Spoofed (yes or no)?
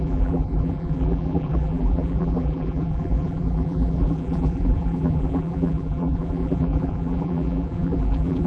yes